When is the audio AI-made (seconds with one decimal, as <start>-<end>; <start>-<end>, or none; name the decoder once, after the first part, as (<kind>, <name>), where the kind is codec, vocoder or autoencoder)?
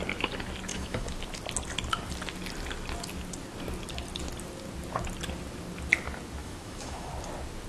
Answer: 0.7-1.2 (autoencoder, DAC-VAE); 6.4-7.1